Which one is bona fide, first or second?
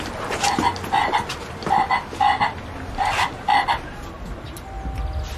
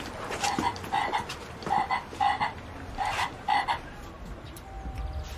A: first